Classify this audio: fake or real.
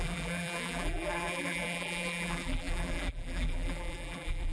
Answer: fake